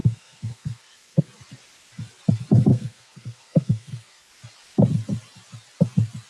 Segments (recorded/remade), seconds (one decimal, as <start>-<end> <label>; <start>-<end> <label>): 0.0-1.3 remade; 1.3-2.7 recorded; 2.7-4.3 remade; 4.3-6.3 recorded